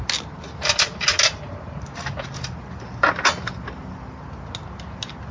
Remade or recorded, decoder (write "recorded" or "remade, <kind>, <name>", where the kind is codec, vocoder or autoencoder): recorded